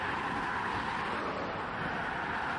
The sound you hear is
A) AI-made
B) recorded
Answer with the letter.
B